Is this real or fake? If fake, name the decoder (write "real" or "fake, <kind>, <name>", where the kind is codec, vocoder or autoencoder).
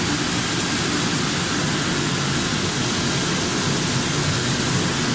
real